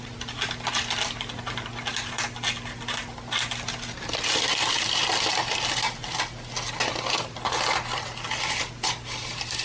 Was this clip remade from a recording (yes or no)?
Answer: no